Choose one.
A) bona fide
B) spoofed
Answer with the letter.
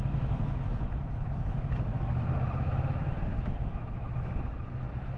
B